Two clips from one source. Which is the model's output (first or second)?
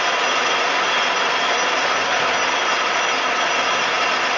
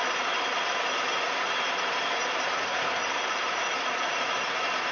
second